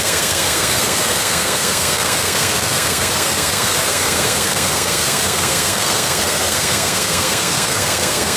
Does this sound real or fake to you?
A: fake